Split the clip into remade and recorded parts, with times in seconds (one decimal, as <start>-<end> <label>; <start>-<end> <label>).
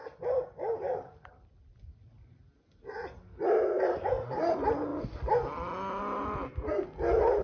0.0-7.4 recorded